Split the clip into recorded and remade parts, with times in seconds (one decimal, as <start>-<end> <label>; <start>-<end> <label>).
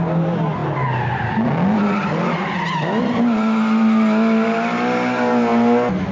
0.0-6.1 recorded